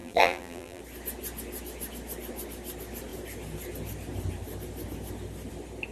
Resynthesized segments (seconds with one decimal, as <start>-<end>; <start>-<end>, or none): 0.0-0.8